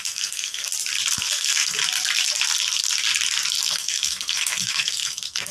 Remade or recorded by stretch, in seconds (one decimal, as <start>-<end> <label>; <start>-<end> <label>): 0.0-0.7 remade; 0.7-1.2 recorded; 1.2-1.8 remade; 1.8-3.6 recorded; 3.6-5.5 remade